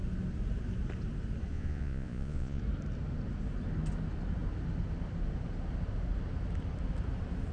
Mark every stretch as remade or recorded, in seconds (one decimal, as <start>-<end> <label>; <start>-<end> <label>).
0.0-1.5 recorded; 1.5-2.6 remade; 2.6-7.5 recorded